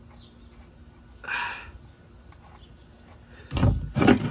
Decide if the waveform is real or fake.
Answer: real